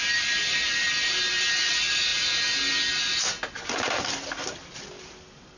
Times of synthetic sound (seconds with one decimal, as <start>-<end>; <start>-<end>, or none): 0.0-1.7